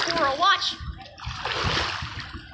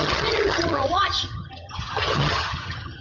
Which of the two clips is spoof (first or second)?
second